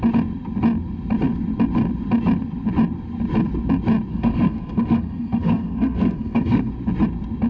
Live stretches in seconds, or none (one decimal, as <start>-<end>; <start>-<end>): 0.0-4.1; 6.7-7.5